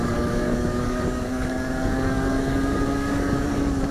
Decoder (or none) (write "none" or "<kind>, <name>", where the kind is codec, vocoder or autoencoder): codec, DAC